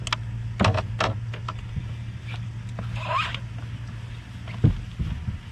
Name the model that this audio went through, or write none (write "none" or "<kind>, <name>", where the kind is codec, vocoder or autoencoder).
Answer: none